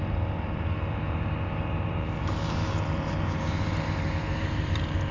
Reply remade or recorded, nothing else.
remade